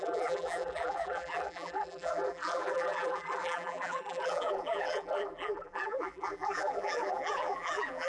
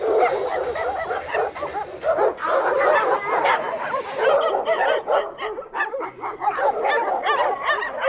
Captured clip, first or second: second